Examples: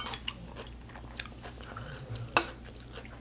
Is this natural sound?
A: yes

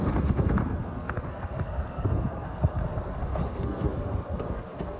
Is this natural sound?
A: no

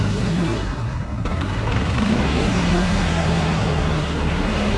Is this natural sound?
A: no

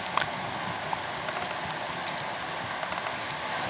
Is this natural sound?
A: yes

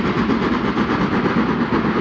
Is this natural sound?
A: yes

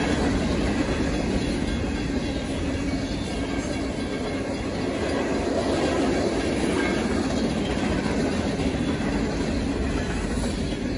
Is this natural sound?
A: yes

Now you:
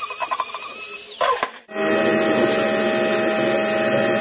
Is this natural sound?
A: yes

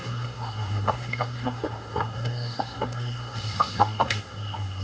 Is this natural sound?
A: no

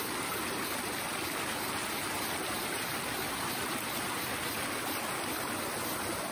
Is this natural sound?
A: yes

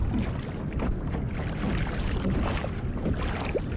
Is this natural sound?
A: yes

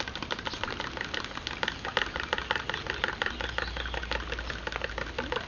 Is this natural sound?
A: yes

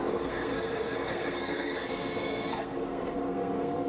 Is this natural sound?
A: no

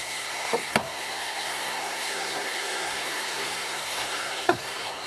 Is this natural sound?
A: no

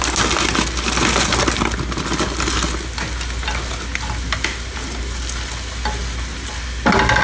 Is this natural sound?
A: yes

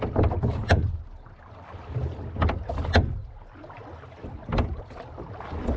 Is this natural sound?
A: yes